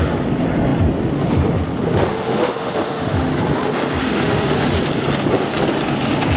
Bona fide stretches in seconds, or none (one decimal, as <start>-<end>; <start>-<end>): 0.0-2.0; 3.3-4.0; 4.8-6.4